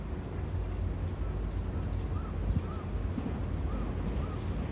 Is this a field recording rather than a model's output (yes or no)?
yes